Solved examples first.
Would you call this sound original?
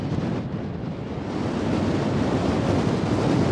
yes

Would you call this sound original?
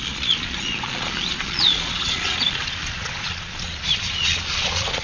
no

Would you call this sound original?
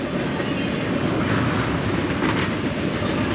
yes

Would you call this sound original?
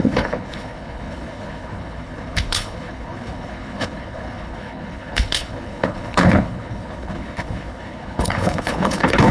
no